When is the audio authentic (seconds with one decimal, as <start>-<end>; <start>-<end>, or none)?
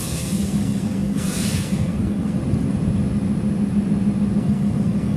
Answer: 2.4-4.4